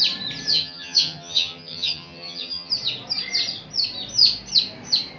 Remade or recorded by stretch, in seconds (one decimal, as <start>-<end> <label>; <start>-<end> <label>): 0.0-0.5 recorded; 0.5-2.7 remade; 2.7-5.2 recorded